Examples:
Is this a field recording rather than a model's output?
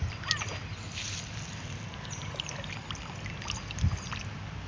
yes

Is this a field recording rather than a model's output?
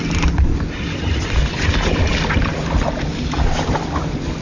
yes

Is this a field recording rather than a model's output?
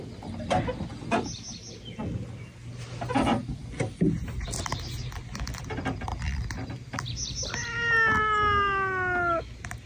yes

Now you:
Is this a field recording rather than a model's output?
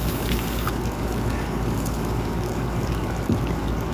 no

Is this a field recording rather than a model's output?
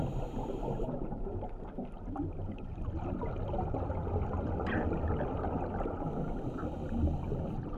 yes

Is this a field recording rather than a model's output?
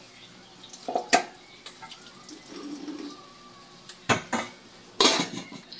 yes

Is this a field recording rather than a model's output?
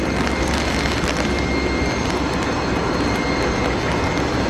yes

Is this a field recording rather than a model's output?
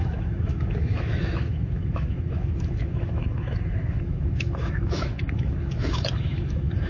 no